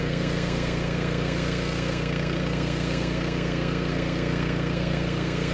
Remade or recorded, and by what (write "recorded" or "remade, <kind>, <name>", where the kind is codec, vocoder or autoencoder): remade, codec, SNAC